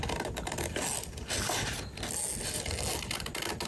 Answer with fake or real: real